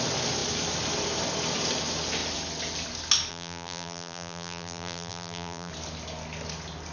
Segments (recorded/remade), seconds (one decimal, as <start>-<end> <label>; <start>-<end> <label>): 0.0-3.3 recorded; 3.3-5.7 remade; 5.7-6.9 recorded